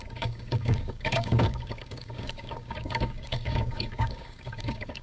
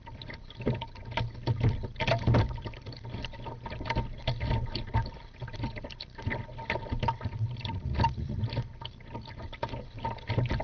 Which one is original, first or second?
second